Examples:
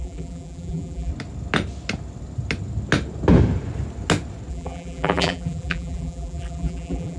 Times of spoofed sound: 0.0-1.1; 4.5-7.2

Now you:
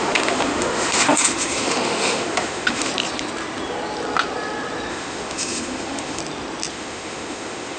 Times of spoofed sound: 0.0-2.9; 4.9-6.2; 6.7-7.8

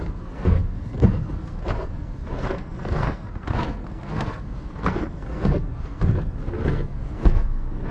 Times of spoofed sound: 0.0-7.9

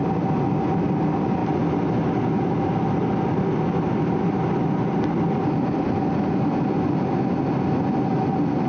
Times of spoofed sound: 4.4-6.0

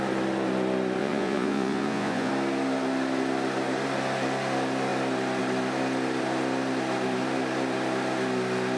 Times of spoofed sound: 1.0-2.3

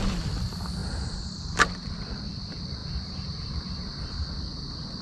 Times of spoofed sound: 2.8-3.6